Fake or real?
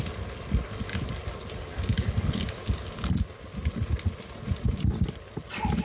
real